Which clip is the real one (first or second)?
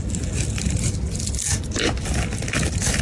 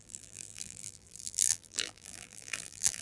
first